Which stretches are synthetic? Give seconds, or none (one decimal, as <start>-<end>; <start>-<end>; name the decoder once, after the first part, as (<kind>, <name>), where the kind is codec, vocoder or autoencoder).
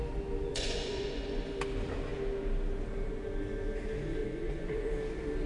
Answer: 0.5-1.4 (vocoder, Vocos); 4.2-4.9